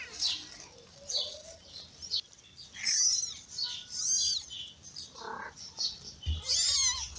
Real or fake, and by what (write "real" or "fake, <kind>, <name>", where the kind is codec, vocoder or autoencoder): real